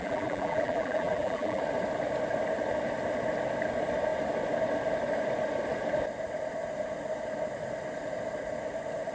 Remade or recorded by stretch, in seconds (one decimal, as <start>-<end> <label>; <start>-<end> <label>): 0.0-1.6 remade; 1.6-9.1 recorded